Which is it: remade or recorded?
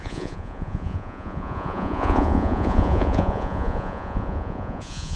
remade